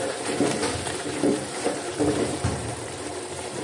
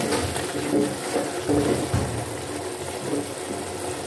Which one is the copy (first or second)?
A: first